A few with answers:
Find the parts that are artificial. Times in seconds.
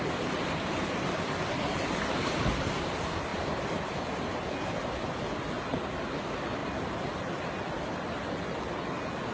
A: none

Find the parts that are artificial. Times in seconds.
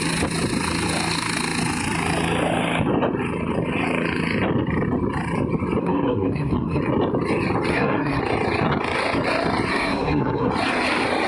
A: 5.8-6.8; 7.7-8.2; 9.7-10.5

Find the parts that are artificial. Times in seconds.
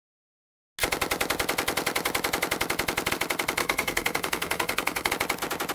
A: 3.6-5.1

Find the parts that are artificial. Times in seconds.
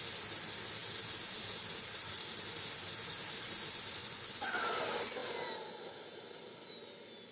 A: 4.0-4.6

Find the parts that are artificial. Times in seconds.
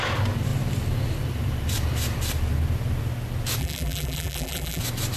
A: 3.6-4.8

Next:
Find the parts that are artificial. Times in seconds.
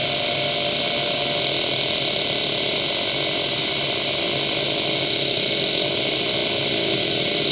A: none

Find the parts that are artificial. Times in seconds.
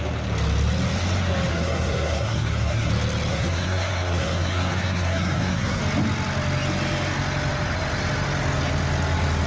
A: 1.5-2.9; 3.3-5.8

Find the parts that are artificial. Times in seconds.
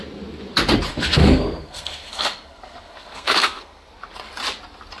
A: 0.9-3.9